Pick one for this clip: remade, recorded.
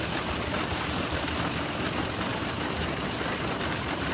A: remade